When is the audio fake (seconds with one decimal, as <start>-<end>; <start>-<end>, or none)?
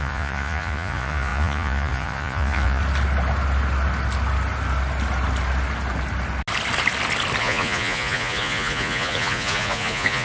0.0-2.8; 7.4-10.2